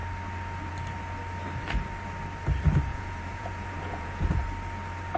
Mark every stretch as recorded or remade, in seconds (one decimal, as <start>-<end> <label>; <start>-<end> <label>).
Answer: 0.0-2.9 recorded; 2.9-4.4 remade; 4.4-5.2 recorded